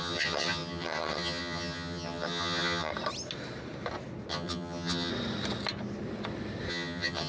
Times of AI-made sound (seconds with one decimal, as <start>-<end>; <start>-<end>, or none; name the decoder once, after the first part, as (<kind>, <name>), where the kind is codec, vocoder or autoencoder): 0.0-2.9 (vocoder, HiFi-GAN); 4.3-5.1; 6.7-7.3